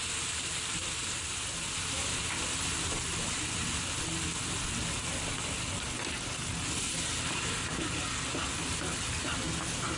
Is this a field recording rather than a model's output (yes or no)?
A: yes